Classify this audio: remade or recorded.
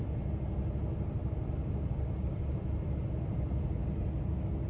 recorded